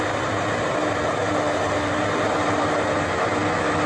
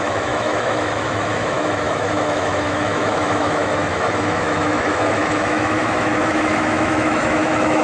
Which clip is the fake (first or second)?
second